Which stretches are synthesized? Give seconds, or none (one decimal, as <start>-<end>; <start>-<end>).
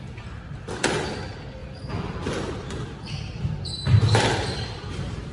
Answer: none